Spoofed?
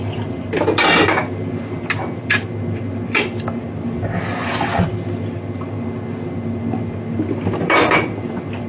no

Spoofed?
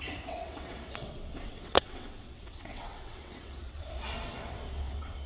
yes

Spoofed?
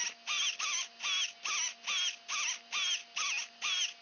no